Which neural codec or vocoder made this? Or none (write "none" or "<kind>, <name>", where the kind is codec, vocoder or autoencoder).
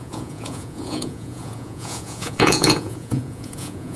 vocoder, Vocos